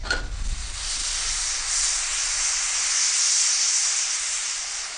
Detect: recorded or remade recorded